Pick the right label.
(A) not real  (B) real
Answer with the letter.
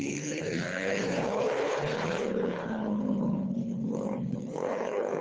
A